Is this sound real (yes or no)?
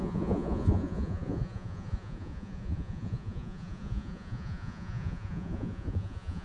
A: no